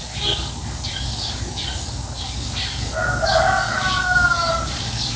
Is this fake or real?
fake